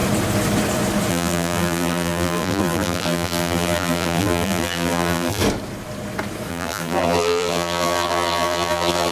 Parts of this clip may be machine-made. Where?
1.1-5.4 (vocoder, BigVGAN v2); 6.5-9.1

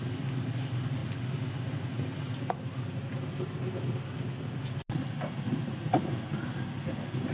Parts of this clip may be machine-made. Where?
none

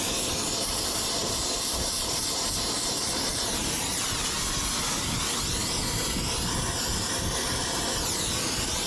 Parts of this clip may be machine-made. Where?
1.2-2.2 (vocoder, BigVGAN v2); 3.3-3.8

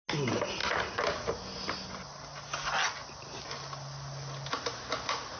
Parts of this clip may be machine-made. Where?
none

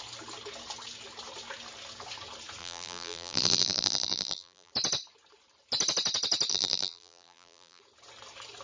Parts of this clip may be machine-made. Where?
2.6-4.7 (vocoder, BigVGAN v2); 6.5-7.8